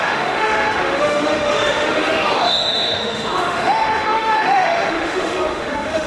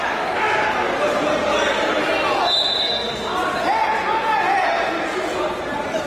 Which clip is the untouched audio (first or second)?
second